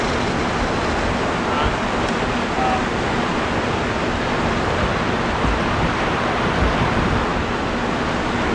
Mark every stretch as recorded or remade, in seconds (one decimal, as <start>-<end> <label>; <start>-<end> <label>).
0.0-8.5 recorded